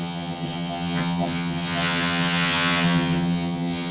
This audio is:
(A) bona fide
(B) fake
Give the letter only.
B